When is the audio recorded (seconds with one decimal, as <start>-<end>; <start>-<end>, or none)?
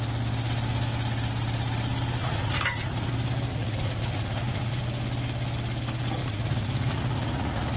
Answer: 0.0-2.2; 3.1-3.5; 4.8-6.2